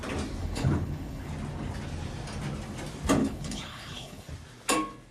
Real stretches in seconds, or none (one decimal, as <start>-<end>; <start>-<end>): 0.0-0.4; 1.3-3.2; 4.3-5.1